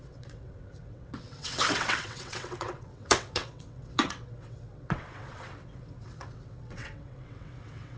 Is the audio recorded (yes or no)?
no